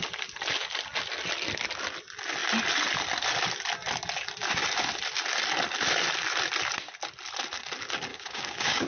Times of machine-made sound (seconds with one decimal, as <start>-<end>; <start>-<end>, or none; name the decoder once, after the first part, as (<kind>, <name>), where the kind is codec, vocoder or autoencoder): 8.1-8.9 (codec, DAC)

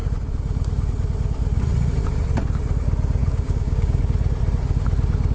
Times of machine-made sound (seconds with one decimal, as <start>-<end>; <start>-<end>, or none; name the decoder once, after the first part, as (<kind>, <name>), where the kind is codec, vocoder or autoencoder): 3.2-4.0 (codec, DAC)

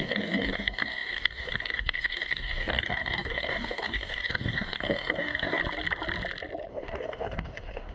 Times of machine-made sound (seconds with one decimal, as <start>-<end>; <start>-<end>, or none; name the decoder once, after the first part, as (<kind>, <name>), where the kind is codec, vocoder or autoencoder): 0.0-5.6 (codec, DAC); 6.7-7.9

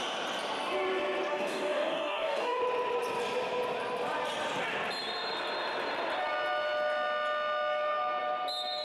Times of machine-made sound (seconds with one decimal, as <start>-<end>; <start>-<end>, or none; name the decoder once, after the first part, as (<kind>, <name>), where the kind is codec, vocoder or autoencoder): 1.3-2.6 (codec, DAC)

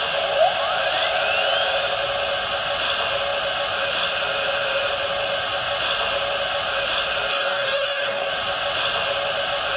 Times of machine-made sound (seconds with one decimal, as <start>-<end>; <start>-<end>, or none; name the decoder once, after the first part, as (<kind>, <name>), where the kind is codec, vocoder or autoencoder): 7.3-8.3 (codec, DAC)